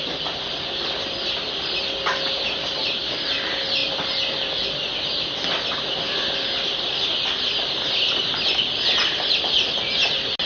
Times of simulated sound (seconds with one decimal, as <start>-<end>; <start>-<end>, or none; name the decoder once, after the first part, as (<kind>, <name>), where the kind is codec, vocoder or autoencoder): none